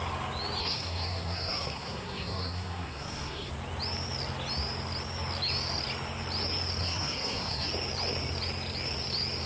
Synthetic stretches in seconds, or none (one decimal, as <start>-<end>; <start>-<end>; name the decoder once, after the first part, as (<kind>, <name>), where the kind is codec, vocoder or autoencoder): 0.6-3.5 (codec, SNAC); 6.8-7.7